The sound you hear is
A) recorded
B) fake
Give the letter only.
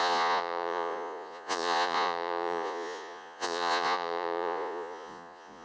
B